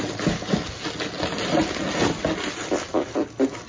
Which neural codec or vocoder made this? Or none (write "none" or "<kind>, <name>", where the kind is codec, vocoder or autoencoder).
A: none